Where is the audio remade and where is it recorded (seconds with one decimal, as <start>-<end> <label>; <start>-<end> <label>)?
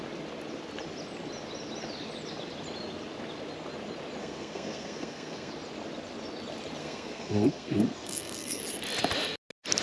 0.0-4.2 recorded; 4.2-5.5 remade; 5.5-6.8 recorded; 6.8-8.6 remade; 8.6-9.8 recorded